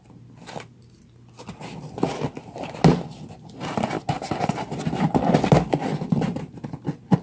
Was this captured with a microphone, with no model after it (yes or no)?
yes